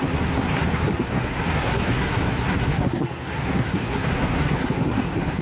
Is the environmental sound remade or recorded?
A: remade